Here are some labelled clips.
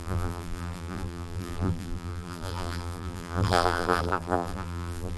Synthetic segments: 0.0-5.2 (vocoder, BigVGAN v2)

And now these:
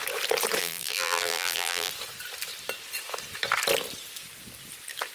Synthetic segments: 0.6-1.9 (vocoder, BigVGAN v2)

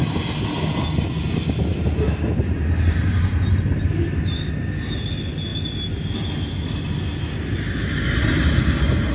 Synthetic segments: 1.7-3.8 (vocoder, BigVGAN v2)

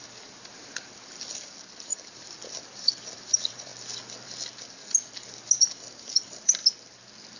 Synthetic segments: 0.0-3.7 (vocoder, BigVGAN v2); 5.6-6.6